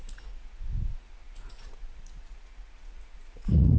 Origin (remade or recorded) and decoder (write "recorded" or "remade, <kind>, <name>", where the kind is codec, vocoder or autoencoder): remade, vocoder, Vocos